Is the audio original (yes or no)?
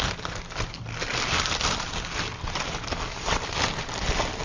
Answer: yes